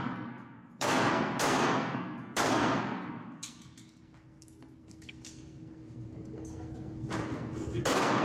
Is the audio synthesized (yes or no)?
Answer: yes